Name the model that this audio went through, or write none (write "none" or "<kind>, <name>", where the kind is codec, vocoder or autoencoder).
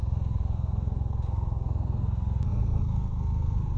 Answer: codec, SNAC